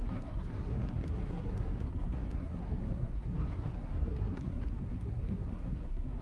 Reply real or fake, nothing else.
fake